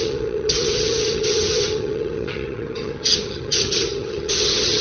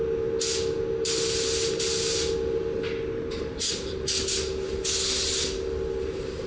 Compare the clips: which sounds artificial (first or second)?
first